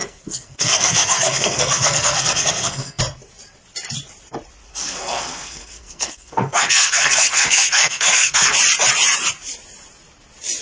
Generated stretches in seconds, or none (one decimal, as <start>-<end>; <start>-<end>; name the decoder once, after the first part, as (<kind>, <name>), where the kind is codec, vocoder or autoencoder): 0.0-3.0 (codec, SNAC); 4.7-8.6